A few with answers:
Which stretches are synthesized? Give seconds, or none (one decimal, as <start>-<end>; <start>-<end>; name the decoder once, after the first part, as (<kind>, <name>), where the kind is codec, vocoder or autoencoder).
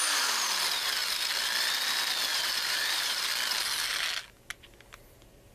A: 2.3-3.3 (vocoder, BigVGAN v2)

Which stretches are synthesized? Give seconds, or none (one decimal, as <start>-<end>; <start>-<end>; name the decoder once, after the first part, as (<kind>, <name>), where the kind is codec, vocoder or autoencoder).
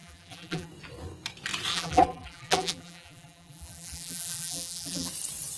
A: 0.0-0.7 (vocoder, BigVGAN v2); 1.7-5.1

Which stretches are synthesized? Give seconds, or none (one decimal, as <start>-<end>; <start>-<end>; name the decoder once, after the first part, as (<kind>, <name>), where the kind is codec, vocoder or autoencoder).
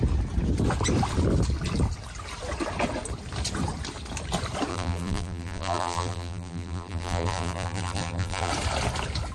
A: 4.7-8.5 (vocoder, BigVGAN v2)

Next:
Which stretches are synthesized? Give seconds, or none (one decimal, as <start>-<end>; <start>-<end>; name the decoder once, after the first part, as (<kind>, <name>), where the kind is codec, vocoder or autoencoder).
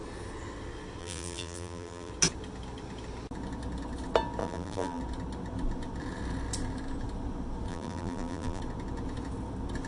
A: 1.0-2.1 (vocoder, BigVGAN v2); 4.4-5.0; 7.7-8.6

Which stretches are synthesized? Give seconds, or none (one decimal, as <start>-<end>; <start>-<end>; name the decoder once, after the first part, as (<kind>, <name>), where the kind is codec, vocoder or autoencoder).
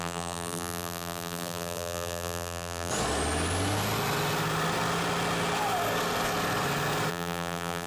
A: 0.0-2.9 (vocoder, BigVGAN v2); 7.1-7.9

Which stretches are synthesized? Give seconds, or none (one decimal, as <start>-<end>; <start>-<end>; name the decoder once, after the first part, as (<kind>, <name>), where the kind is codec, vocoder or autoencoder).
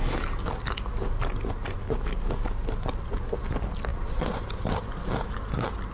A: 3.9-4.6 (vocoder, BigVGAN v2)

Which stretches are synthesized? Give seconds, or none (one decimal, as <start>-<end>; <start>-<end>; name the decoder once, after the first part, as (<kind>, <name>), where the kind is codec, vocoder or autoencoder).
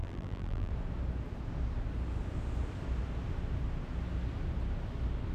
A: 0.0-0.7 (vocoder, BigVGAN v2)